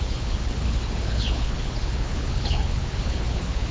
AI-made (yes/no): yes